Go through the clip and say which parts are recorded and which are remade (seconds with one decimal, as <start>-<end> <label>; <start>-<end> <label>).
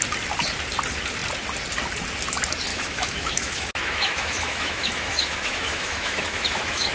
0.0-2.7 recorded; 2.7-6.9 remade